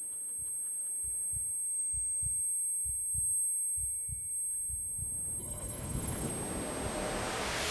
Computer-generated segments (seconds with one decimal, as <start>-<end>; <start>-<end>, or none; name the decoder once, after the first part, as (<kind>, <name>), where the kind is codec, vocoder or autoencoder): 5.4-6.3 (codec, HILCodec)